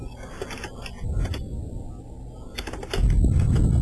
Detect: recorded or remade recorded